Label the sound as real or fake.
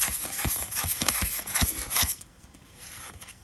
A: fake